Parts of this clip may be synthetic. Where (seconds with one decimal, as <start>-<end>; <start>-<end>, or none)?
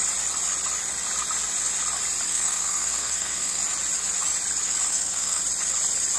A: 2.3-3.6; 4.9-5.4